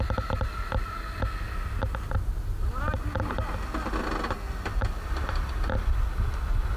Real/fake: real